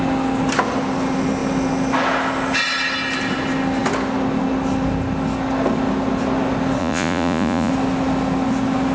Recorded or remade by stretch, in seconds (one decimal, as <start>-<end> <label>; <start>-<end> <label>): 0.0-6.8 recorded; 6.8-7.7 remade; 7.7-8.9 recorded